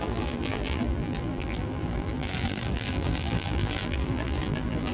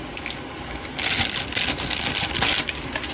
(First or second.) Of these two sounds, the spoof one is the first